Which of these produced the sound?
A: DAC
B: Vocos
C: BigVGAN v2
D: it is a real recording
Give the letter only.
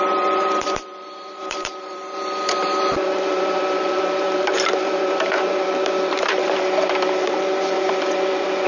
C